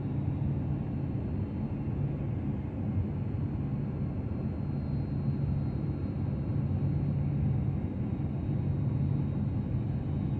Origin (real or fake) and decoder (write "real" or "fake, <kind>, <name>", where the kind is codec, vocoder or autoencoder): real